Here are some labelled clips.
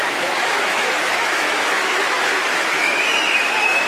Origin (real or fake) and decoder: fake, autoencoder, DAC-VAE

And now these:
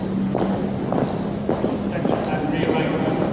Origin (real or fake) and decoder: real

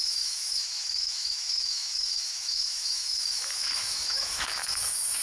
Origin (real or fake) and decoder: fake, autoencoder, DAC-VAE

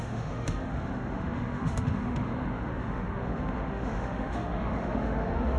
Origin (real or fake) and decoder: fake, autoencoder, DAC-VAE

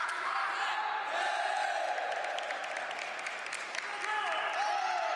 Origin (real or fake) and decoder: real